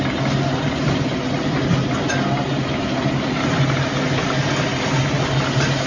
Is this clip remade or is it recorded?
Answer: recorded